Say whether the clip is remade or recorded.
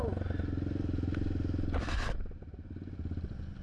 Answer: recorded